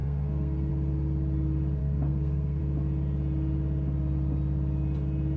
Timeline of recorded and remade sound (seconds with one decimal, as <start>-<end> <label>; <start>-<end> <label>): 0.0-0.7 remade; 0.7-1.8 recorded; 1.8-2.6 remade; 2.6-5.4 recorded